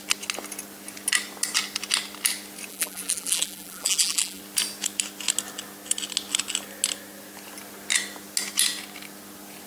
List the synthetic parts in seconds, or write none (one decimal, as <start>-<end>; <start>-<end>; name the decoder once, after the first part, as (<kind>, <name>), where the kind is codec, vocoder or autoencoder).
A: 2.7-4.4 (vocoder, BigVGAN v2)

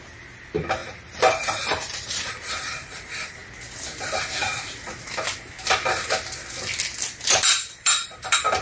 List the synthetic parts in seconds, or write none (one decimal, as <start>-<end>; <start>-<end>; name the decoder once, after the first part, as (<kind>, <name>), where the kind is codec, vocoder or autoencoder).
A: 0.0-3.4 (vocoder, BigVGAN v2); 7.3-8.6

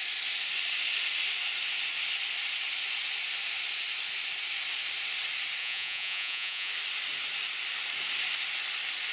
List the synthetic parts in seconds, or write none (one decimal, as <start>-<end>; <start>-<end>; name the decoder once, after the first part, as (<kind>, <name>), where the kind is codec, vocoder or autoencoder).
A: 5.6-6.7 (vocoder, Vocos)

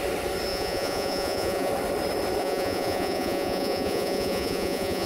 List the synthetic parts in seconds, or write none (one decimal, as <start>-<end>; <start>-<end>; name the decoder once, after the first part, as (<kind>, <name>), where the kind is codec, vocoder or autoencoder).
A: 0.5-1.7 (vocoder, Vocos); 2.4-5.1

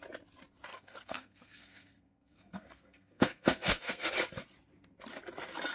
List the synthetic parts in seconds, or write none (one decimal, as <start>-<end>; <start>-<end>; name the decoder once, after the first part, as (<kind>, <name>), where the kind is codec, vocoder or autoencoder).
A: 0.7-4.1 (codec, SNAC)

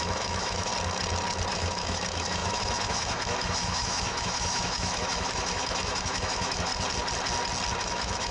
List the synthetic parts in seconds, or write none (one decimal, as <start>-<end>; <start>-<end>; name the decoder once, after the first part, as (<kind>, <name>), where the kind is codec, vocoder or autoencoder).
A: 0.0-0.7 (autoencoder, DAC-VAE); 1.5-6.7; 7.8-8.3

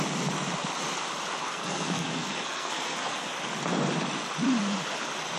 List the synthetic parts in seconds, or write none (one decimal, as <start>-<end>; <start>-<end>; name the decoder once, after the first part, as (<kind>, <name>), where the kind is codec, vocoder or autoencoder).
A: 1.4-3.3 (codec, SNAC)

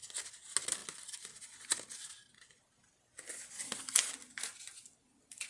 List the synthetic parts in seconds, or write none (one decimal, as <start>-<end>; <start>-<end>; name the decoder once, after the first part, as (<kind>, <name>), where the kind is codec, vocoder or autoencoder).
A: none